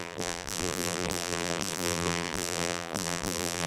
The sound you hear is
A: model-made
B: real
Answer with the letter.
A